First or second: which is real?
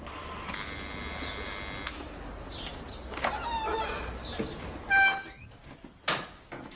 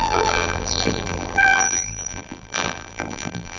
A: first